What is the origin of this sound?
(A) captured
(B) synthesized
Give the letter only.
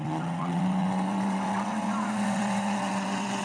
B